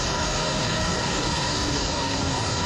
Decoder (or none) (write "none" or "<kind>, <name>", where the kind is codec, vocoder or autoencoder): codec, DAC